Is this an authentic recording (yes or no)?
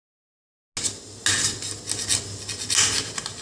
yes